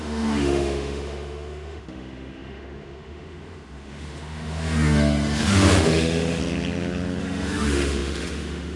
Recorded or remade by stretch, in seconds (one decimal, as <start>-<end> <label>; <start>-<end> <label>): 0.0-6.4 remade; 6.4-7.2 recorded; 7.2-8.8 remade